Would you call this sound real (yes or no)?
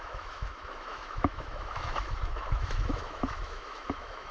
no